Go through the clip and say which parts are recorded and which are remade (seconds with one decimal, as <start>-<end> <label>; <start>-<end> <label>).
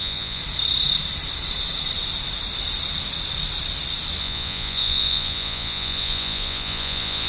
0.0-0.4 remade; 0.4-4.2 recorded; 4.2-7.3 remade